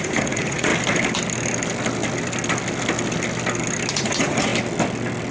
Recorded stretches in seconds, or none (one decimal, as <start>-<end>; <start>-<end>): 0.7-3.9; 4.5-5.3